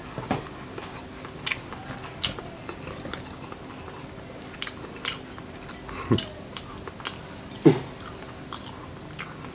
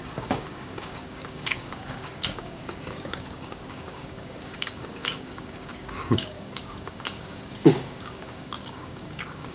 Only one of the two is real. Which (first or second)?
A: first